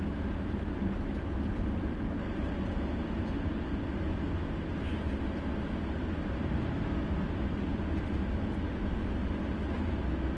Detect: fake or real real